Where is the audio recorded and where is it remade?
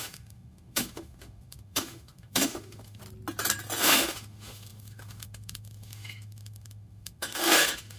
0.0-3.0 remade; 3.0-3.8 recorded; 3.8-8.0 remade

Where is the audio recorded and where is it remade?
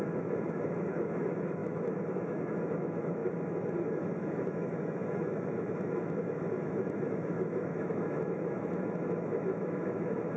0.0-10.4 remade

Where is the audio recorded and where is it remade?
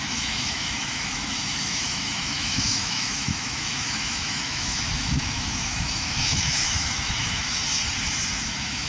0.0-7.6 remade; 7.6-8.4 recorded; 8.4-8.9 remade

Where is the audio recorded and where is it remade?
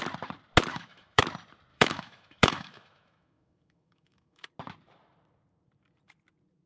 0.0-0.7 recorded; 0.7-1.2 remade; 1.2-1.7 recorded; 1.7-4.5 remade; 4.5-6.7 recorded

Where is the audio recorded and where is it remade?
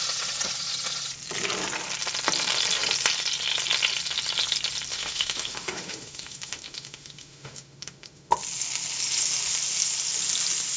0.0-4.9 recorded; 4.9-8.3 remade; 8.3-10.8 recorded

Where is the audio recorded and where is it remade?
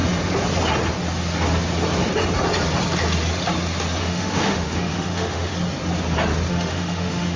0.0-4.0 recorded; 4.0-5.5 remade; 5.5-6.5 recorded; 6.5-7.4 remade